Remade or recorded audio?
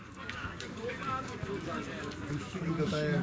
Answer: remade